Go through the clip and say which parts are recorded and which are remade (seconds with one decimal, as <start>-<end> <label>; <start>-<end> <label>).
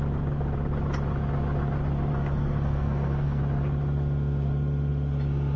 0.0-2.1 recorded; 2.1-3.4 remade; 3.4-5.6 recorded